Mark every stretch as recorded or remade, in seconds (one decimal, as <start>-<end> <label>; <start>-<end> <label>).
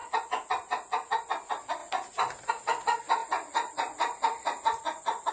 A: 0.0-5.3 recorded